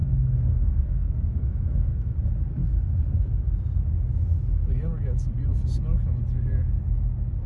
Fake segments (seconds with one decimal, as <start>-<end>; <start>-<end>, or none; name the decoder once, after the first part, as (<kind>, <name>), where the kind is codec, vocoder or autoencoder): 0.0-2.2 (codec, SNAC)